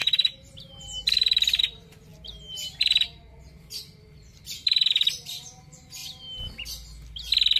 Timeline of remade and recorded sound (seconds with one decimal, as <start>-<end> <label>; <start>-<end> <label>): 0.0-6.0 remade; 6.0-7.6 recorded

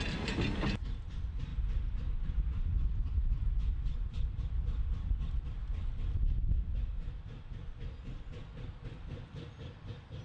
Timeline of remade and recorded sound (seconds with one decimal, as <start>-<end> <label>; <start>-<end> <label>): 0.0-1.5 recorded; 1.5-6.7 remade; 6.7-10.2 recorded

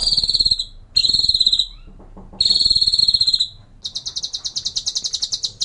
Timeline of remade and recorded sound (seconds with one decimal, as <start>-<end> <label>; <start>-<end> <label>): 0.0-1.0 recorded; 1.0-2.0 remade; 2.0-5.6 recorded

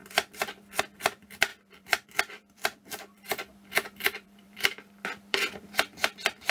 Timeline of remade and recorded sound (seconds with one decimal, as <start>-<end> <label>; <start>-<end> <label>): 0.0-6.5 remade

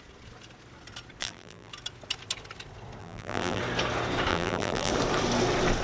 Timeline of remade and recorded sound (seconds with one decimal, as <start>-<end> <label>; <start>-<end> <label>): 0.0-1.2 recorded; 1.2-1.7 remade; 1.7-3.0 recorded; 3.0-3.6 remade; 3.6-4.3 recorded; 4.3-4.9 remade; 4.9-5.8 recorded

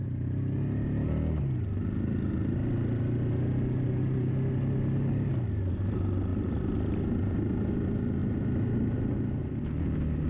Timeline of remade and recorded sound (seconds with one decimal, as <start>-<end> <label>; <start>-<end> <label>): 0.0-10.3 recorded